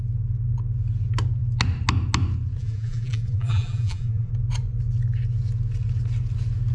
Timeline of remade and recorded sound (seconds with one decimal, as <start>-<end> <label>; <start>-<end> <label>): 0.0-2.6 recorded; 2.6-4.3 remade; 4.3-6.7 recorded